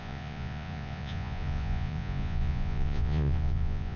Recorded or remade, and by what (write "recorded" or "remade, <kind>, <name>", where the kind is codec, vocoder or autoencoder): remade, vocoder, Vocos